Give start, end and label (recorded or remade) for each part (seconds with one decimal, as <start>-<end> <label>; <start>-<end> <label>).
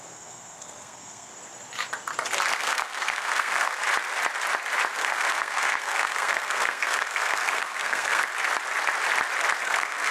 0.0-1.3 remade; 1.3-2.5 recorded; 2.5-3.8 remade; 3.8-4.9 recorded; 4.9-8.3 remade; 8.3-9.6 recorded; 9.6-10.1 remade